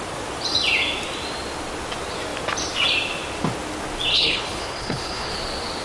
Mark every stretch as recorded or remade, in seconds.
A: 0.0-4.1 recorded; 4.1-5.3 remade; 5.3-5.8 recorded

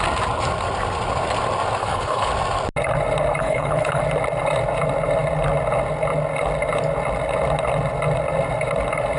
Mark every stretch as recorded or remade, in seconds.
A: 0.0-1.8 recorded; 1.8-2.3 remade; 2.3-3.4 recorded; 3.4-4.0 remade; 4.0-9.2 recorded

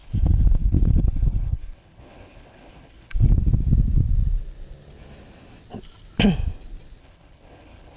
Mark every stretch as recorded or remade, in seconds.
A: 0.0-3.3 remade; 3.3-7.0 recorded; 7.0-8.0 remade